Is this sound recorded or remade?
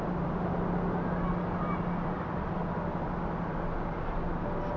recorded